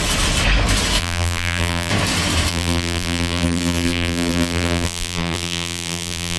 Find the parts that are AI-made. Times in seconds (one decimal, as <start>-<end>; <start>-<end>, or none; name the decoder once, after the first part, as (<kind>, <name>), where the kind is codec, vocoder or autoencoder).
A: 1.0-1.9 (vocoder, BigVGAN v2); 2.5-6.4